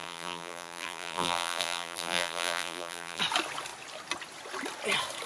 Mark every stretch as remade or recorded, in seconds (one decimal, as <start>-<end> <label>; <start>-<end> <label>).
0.0-3.2 remade; 3.2-5.3 recorded